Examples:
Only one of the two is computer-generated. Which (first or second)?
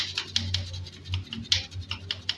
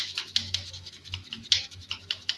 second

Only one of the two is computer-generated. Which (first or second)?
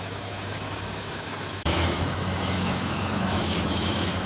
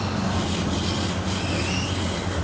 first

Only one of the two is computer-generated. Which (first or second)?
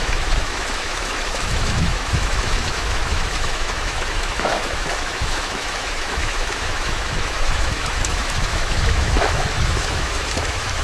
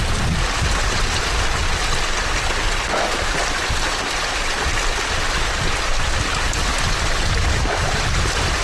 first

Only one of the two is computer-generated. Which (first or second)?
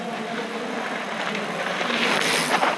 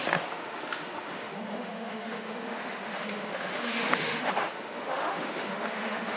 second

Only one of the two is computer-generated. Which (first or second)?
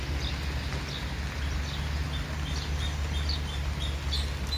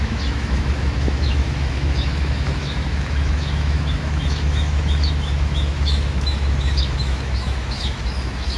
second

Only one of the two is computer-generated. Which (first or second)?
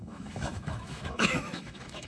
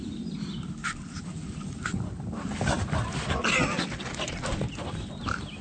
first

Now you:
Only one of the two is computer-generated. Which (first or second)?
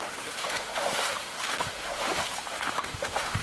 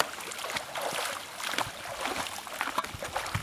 first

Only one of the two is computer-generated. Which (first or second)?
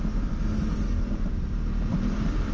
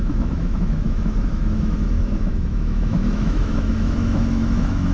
second